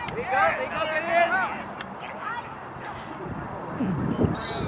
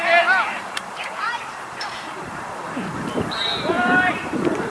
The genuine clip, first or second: first